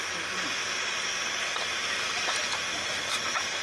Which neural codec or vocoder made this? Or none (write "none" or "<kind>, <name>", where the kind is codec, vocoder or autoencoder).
none